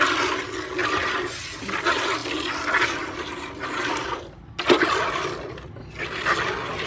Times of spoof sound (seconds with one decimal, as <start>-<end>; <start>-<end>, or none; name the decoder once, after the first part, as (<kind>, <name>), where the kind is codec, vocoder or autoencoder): none